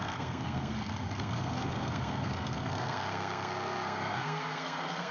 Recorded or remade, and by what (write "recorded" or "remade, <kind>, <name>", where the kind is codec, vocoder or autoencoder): remade, codec, SNAC